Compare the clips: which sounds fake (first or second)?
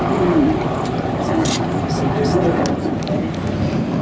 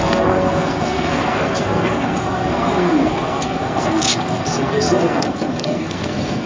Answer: second